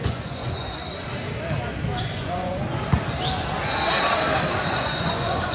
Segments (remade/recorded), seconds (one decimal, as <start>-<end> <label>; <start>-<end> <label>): 0.0-0.8 remade; 0.8-2.0 recorded; 2.0-2.5 remade; 2.5-4.7 recorded; 4.7-5.5 remade